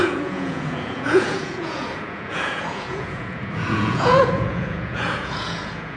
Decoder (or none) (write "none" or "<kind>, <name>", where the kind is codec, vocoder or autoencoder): vocoder, Vocos